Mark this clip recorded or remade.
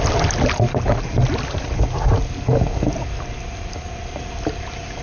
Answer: recorded